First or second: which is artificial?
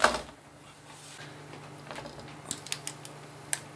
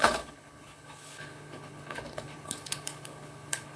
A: second